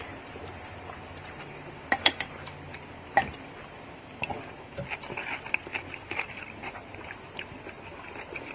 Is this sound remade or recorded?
remade